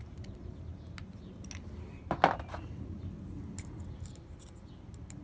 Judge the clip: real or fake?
real